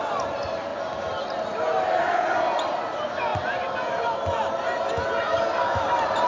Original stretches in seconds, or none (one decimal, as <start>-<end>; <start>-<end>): 0.0-6.3